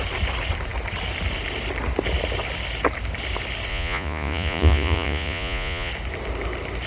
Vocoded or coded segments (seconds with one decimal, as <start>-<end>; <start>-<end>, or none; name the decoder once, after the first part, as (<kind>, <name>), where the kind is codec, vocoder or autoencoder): 3.7-5.9 (vocoder, Vocos)